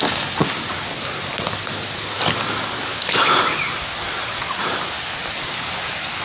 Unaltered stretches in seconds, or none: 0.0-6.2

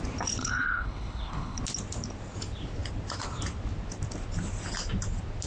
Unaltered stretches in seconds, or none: 0.0-0.4; 1.6-5.5